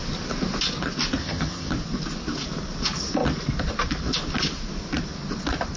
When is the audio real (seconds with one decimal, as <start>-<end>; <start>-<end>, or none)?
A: 0.0-1.2; 1.7-5.8